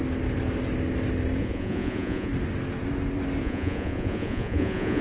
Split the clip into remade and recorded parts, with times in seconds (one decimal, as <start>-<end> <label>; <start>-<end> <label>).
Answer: 0.0-1.4 recorded; 1.4-2.3 remade; 2.3-3.4 recorded; 3.4-5.0 remade

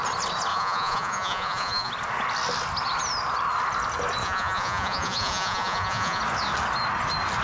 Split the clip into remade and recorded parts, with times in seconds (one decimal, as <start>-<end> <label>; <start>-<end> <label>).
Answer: 0.0-0.5 recorded; 0.5-1.9 remade; 1.9-4.2 recorded; 4.2-6.2 remade; 6.2-7.4 recorded

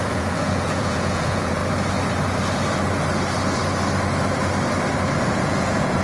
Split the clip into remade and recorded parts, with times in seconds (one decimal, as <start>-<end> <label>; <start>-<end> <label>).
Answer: 0.0-1.6 remade; 1.6-5.2 recorded; 5.2-6.0 remade

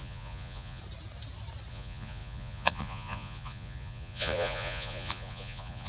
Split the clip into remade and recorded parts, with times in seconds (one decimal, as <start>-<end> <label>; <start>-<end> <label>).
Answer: 0.0-0.8 remade; 0.8-1.7 recorded; 1.7-5.9 remade